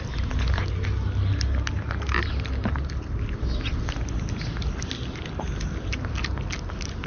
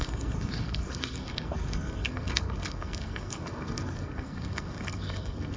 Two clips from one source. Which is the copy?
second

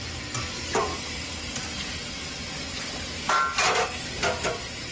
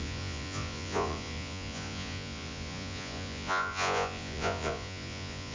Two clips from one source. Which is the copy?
second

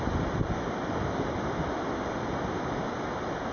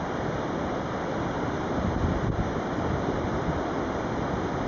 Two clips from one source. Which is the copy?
second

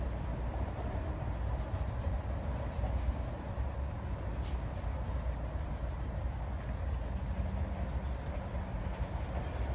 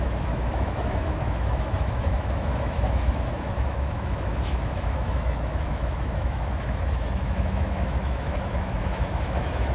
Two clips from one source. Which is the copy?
second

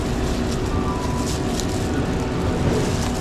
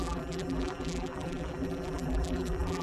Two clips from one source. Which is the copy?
second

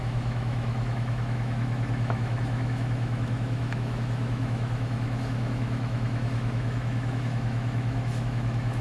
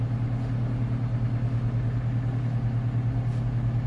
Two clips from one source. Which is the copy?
first